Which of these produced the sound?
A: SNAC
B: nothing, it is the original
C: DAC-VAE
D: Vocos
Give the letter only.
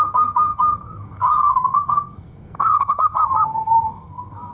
A